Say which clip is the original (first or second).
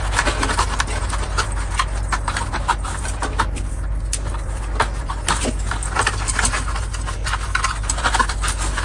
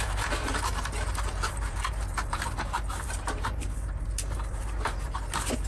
first